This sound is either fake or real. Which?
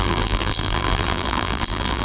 fake